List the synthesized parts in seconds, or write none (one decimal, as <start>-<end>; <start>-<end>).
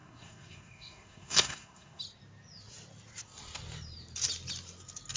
0.0-2.0